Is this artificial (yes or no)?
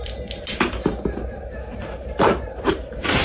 yes